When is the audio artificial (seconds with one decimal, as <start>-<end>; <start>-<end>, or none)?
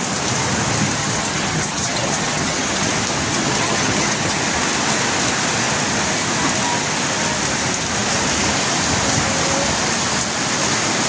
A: 1.0-2.9; 3.3-4.4